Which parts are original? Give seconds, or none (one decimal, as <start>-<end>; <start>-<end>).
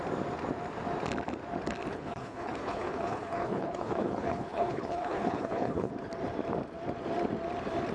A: 0.0-1.9; 5.9-7.9